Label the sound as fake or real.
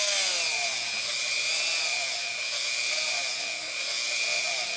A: real